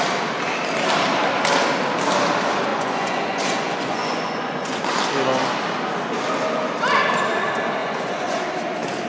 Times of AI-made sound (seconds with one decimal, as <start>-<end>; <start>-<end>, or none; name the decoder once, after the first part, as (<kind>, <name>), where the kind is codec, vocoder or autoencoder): 2.7-4.8 (vocoder, Vocos); 7.8-8.4